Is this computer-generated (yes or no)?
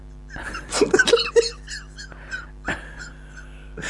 no